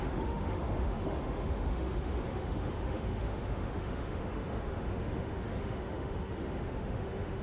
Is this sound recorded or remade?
remade